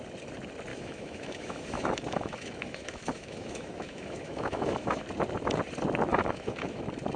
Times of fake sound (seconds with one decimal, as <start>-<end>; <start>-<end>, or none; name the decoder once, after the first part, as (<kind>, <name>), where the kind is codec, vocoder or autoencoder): 0.7-5.0 (autoencoder, DAC-VAE); 6.1-6.8